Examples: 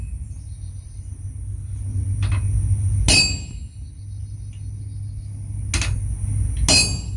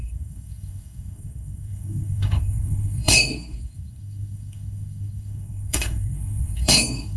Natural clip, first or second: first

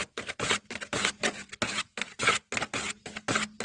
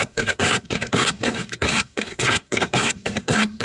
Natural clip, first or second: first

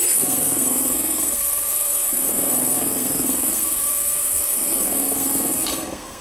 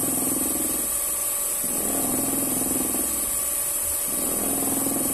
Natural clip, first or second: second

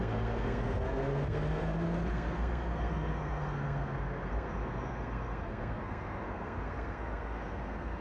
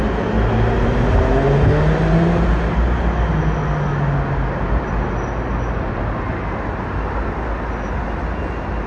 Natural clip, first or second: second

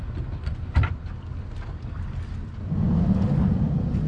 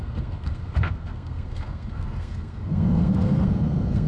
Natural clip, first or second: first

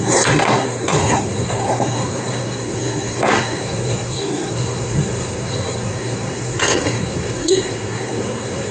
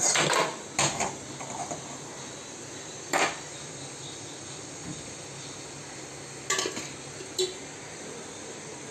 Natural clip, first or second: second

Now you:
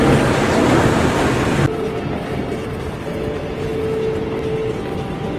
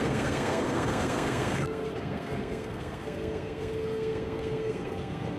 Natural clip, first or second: first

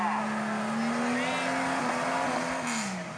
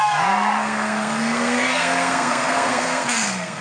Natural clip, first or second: first